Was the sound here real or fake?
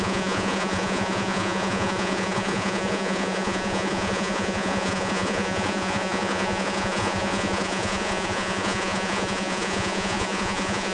fake